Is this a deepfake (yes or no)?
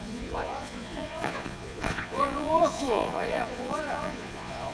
yes